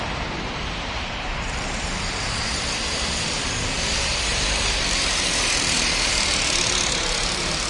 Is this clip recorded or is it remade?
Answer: remade